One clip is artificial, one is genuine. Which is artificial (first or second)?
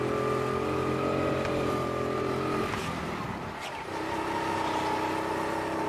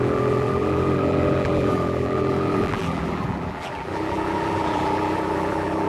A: second